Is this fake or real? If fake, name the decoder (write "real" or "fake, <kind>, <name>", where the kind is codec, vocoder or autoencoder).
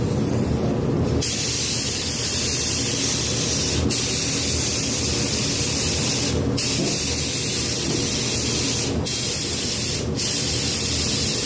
real